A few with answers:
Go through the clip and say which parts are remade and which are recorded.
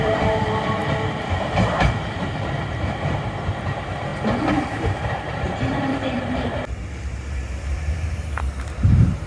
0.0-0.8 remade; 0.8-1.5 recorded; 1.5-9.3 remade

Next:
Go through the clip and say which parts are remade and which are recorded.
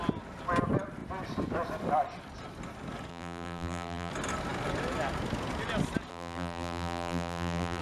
0.0-3.1 recorded; 3.1-4.1 remade; 4.1-6.1 recorded; 6.1-7.8 remade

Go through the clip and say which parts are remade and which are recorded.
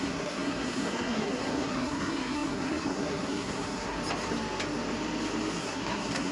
0.0-4.0 remade; 4.0-5.6 recorded; 5.6-6.3 remade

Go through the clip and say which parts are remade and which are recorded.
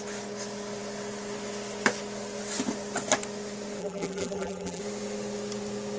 0.0-3.8 recorded; 3.8-4.8 remade; 4.8-6.0 recorded